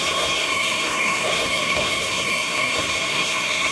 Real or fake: fake